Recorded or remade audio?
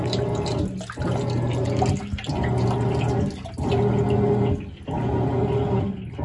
recorded